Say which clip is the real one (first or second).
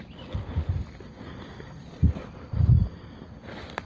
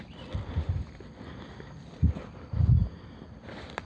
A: first